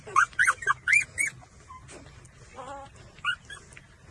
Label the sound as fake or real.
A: real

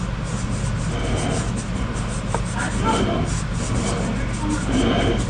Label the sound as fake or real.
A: real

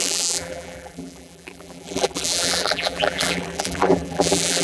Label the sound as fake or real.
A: fake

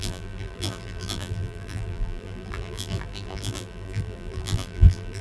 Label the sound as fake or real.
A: fake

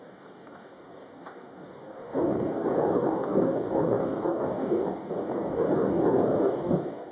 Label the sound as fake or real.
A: fake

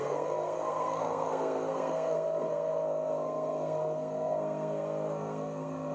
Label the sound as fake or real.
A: fake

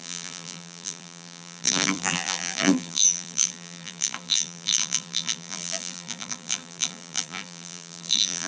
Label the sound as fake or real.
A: fake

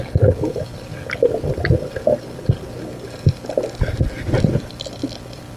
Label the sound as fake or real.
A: real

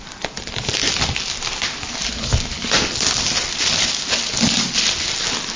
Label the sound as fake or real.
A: real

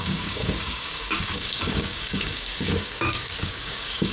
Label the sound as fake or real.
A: fake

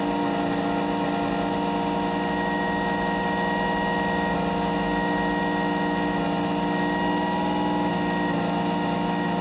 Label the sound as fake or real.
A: real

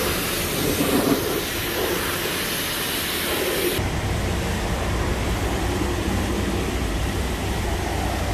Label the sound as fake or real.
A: real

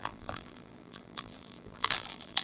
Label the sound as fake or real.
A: fake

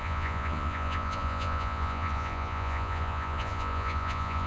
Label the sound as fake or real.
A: fake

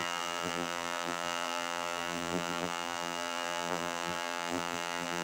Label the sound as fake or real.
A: fake